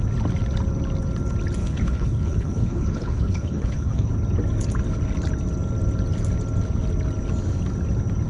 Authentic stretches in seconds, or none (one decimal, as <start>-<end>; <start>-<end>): 0.0-1.6; 4.1-8.3